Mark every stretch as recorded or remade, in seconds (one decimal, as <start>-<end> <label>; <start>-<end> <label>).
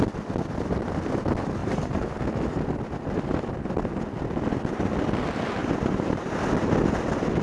0.0-1.6 recorded; 1.6-2.2 remade; 2.2-5.6 recorded; 5.6-6.4 remade; 6.4-7.4 recorded